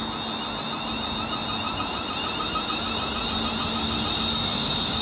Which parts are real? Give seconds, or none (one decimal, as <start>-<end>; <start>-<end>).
0.0-5.0